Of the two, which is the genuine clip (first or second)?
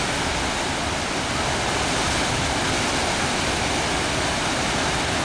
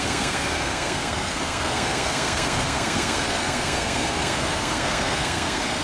first